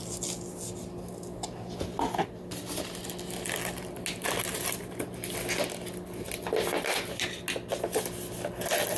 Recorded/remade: recorded